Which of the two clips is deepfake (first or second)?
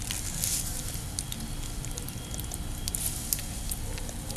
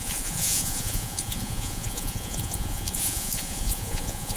second